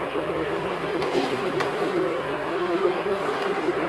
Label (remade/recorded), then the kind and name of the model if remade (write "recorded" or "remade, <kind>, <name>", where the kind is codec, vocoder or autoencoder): remade, codec, SNAC